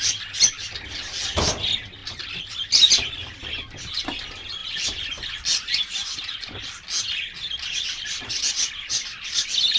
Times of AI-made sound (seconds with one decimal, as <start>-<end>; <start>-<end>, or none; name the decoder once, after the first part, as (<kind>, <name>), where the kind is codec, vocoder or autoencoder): none